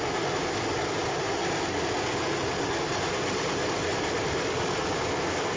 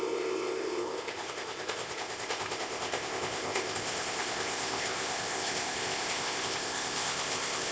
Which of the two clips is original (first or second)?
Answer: first